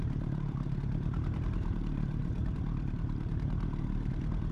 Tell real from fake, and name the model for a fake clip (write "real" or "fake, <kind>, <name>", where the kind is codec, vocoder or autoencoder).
fake, vocoder, BigVGAN v2